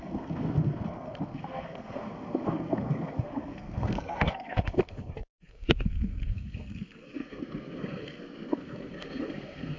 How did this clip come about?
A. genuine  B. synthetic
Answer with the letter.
B